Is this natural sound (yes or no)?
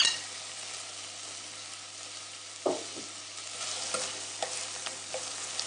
yes